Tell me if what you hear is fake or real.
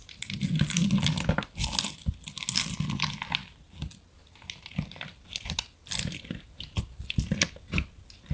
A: real